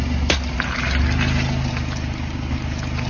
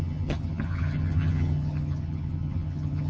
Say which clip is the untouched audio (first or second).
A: first